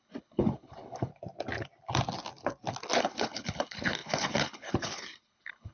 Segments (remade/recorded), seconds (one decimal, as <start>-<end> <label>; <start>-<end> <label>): 0.0-1.1 remade; 1.1-3.0 recorded; 3.0-5.7 remade